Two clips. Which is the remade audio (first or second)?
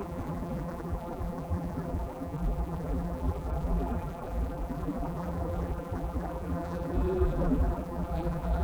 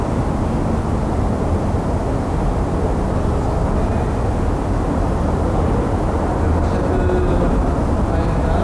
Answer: first